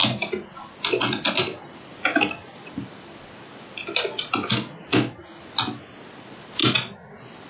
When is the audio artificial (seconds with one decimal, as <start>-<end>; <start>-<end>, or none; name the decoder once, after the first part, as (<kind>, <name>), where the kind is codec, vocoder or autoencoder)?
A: none